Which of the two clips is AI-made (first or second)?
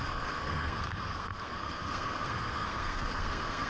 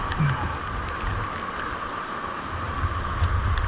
first